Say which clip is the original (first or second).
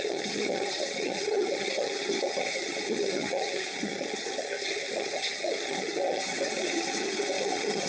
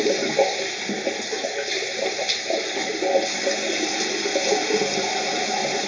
second